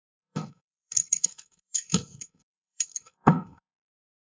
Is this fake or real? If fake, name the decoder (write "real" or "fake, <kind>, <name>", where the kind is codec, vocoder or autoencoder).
fake, codec, SNAC